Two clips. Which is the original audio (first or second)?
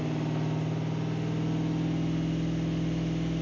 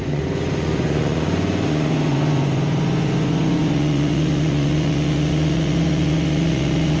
first